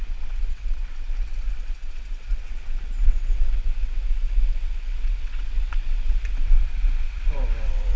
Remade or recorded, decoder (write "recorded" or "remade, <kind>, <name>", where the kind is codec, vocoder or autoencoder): remade, vocoder, WaveNeXt